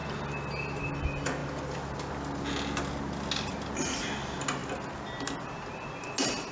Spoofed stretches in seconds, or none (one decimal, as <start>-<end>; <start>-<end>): none

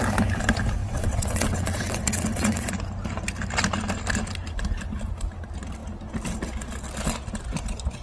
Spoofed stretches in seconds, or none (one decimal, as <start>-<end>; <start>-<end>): 0.8-2.7

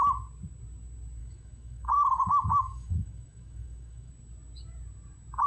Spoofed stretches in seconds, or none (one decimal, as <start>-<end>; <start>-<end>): 1.2-4.1

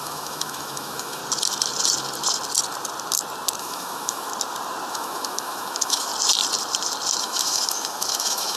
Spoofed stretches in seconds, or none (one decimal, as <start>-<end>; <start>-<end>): 0.0-1.2; 3.6-4.3; 4.9-6.1; 7.2-8.6